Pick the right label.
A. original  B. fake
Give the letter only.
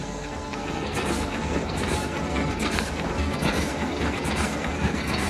B